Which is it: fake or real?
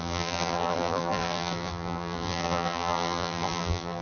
fake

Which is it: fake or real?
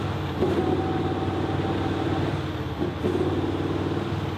real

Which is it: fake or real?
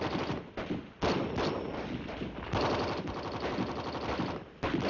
real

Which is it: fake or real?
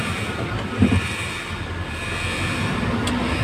real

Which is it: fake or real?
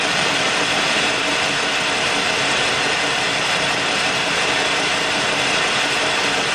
fake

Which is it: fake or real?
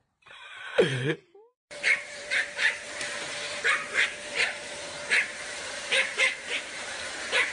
fake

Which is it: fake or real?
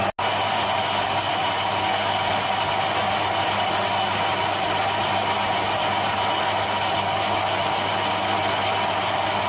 real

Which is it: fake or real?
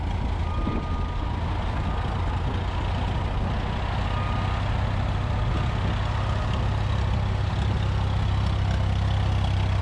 real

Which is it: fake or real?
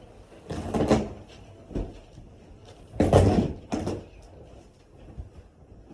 real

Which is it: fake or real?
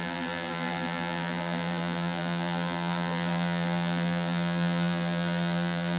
fake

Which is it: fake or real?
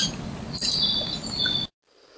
real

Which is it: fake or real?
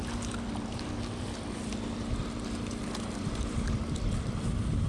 fake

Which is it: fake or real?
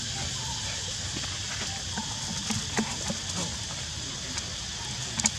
real